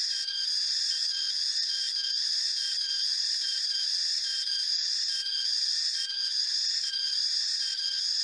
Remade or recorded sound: remade